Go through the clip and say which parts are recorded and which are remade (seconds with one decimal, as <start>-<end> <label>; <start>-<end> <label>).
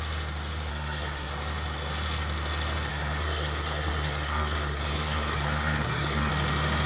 0.0-0.7 recorded; 0.7-1.3 remade; 1.3-2.9 recorded; 2.9-6.3 remade; 6.3-6.9 recorded